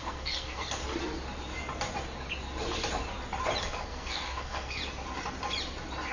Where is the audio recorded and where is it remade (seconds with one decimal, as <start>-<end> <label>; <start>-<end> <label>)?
0.0-0.8 remade; 0.8-3.6 recorded; 3.6-4.8 remade; 4.8-6.1 recorded